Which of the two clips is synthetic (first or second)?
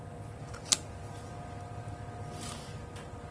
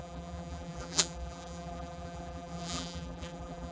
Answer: second